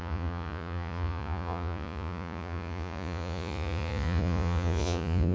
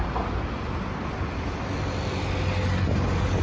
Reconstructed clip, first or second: first